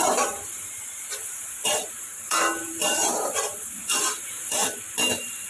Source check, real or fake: fake